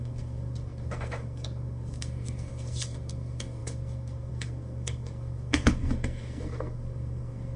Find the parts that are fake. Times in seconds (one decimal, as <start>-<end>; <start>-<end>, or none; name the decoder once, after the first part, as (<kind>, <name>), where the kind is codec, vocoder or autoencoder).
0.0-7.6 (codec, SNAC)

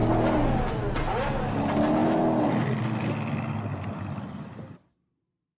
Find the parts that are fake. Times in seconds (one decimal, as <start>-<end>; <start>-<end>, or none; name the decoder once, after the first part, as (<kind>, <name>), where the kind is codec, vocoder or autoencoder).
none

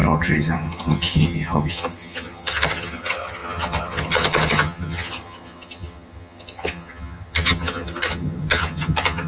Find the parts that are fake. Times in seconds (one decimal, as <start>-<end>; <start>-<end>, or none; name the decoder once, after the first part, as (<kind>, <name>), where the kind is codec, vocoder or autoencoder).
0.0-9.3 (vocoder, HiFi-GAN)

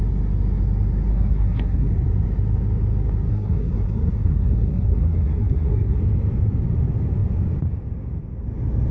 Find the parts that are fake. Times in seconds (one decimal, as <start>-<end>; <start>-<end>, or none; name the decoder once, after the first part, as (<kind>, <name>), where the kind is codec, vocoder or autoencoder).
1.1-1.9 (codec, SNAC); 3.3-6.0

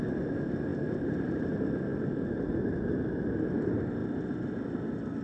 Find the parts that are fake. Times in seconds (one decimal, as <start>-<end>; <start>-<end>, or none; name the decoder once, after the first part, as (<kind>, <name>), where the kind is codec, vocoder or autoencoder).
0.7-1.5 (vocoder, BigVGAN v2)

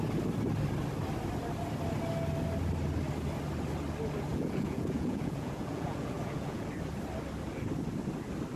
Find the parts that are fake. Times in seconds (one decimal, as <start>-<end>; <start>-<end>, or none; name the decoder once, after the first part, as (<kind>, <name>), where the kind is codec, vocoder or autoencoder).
4.3-6.7 (vocoder, Vocos)